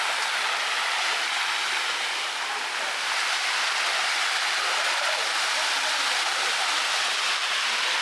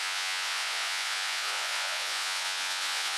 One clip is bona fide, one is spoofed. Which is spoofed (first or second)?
second